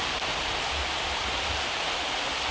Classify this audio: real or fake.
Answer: real